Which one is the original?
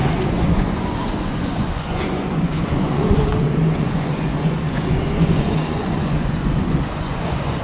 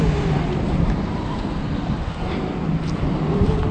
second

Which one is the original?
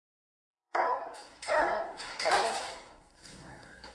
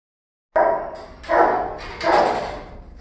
second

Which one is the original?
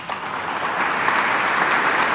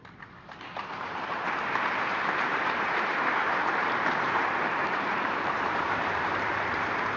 first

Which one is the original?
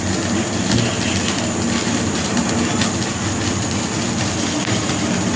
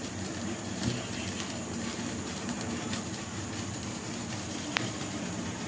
first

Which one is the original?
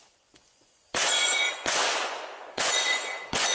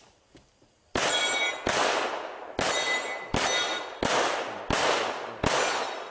second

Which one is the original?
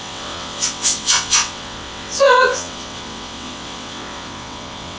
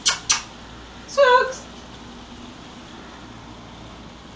second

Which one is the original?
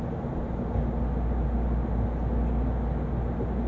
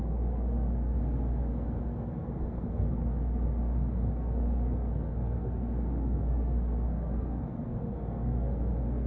first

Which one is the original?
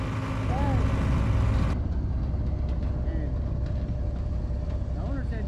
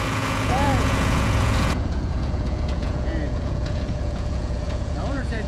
first